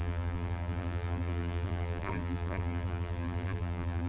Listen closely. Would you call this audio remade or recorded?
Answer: remade